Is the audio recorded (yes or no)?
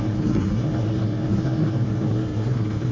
no